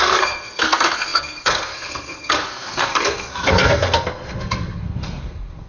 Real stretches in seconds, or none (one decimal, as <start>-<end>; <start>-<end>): none